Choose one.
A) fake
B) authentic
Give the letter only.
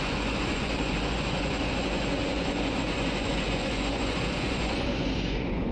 A